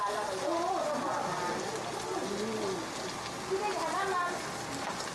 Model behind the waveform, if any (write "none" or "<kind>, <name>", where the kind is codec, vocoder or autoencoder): none